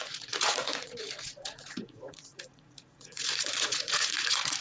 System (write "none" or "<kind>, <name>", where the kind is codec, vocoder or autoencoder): vocoder, Vocos